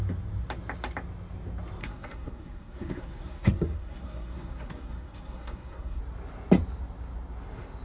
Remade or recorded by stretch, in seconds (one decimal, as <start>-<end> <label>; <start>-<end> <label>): 0.0-1.8 recorded; 1.8-6.0 remade; 6.0-7.8 recorded